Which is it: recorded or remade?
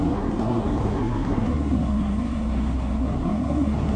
remade